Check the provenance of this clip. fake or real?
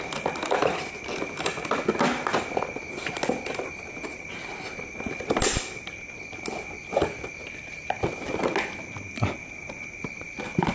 real